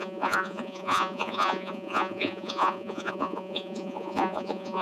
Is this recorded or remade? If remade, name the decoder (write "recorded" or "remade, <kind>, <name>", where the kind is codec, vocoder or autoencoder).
remade, vocoder, Vocos